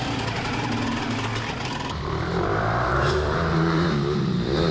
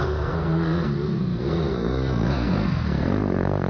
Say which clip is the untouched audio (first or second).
first